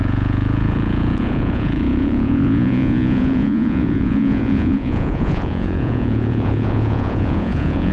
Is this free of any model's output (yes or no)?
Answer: no